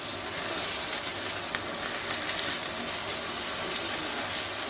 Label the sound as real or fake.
real